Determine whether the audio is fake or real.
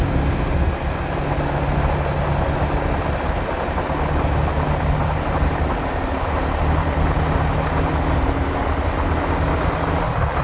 real